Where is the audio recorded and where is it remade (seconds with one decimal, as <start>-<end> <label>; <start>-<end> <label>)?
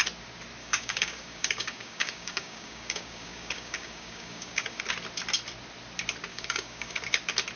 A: 0.0-0.6 recorded; 0.6-4.8 remade; 4.8-6.3 recorded; 6.3-7.0 remade; 7.0-7.6 recorded